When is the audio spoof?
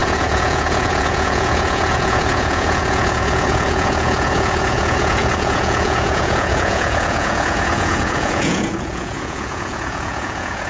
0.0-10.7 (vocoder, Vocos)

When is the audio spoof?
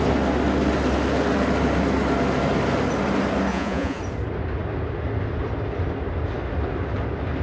3.5-4.0 (vocoder, Vocos)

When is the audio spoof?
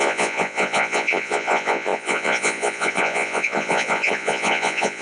0.0-5.0 (vocoder, Vocos)